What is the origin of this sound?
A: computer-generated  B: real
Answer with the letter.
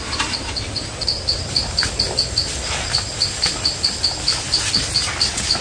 B